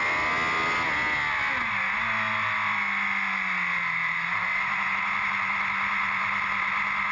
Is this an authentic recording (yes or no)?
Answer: yes